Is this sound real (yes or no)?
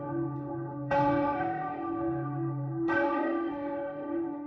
no